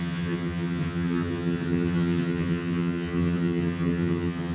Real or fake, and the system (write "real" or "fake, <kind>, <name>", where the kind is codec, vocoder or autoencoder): fake, vocoder, HiFi-GAN